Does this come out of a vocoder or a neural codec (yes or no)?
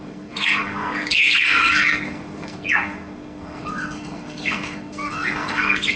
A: yes